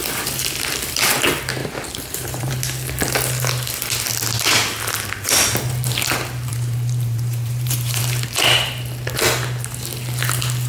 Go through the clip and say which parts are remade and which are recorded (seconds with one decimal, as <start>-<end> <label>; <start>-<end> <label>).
0.0-1.6 recorded; 1.6-2.5 remade; 2.5-6.5 recorded; 6.5-8.0 remade; 8.0-10.7 recorded